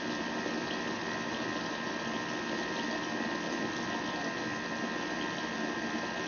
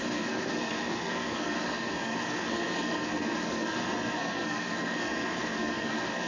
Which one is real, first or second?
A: first